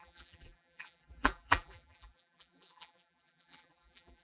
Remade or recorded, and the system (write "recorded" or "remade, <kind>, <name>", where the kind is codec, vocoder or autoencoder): remade, vocoder, BigVGAN v2